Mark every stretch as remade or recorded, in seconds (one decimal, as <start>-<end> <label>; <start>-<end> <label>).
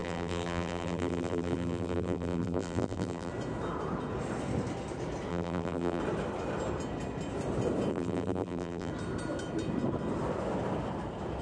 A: 0.0-3.3 remade; 3.3-5.3 recorded; 5.3-6.0 remade; 6.0-7.9 recorded; 7.9-8.9 remade; 8.9-11.4 recorded